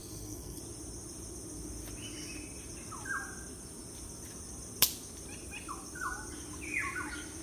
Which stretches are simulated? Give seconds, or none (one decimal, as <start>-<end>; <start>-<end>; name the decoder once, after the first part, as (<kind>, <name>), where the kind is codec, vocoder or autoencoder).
0.0-0.6 (codec, SNAC)